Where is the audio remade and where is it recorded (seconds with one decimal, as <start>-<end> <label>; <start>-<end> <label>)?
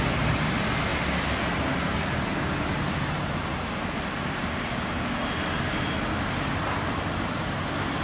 0.0-8.0 recorded